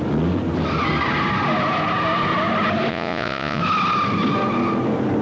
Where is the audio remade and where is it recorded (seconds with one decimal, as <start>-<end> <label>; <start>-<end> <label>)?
0.0-2.9 recorded; 2.9-3.6 remade; 3.6-5.2 recorded